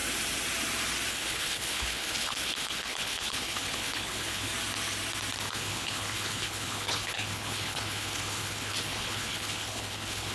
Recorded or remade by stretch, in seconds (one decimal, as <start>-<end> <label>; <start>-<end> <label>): 0.0-1.1 recorded; 1.1-4.5 remade; 4.5-5.4 recorded; 5.4-10.3 remade